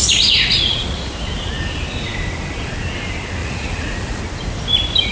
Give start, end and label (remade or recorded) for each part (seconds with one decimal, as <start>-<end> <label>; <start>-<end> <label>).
0.0-1.1 remade; 1.1-3.4 recorded; 3.4-4.2 remade; 4.2-5.1 recorded